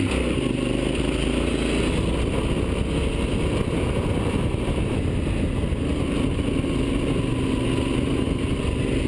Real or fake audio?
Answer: real